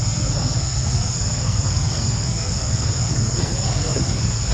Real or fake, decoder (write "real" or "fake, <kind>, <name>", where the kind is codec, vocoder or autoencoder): fake, codec, SNAC